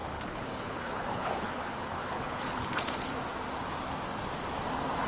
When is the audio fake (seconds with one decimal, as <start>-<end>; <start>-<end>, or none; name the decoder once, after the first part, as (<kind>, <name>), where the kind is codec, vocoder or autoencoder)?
0.0-3.1 (codec, HILCodec)